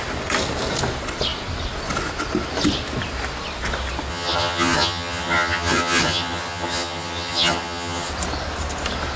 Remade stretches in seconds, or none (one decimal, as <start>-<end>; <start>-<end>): 4.1-8.1

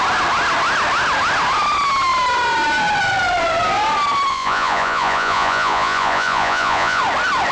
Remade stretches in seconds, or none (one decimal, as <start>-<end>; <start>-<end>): 4.3-7.0